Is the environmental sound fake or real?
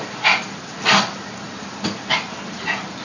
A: real